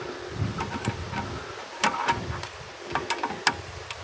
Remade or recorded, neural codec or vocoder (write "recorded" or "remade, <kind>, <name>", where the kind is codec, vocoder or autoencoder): recorded